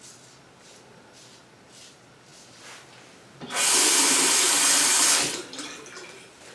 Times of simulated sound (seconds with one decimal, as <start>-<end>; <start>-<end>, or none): none